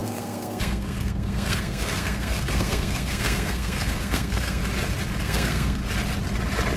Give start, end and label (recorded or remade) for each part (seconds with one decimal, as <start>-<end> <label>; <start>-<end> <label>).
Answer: 0.0-4.6 remade; 4.6-5.2 recorded; 5.2-5.8 remade; 5.8-6.8 recorded